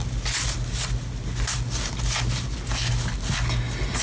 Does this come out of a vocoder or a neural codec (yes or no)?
no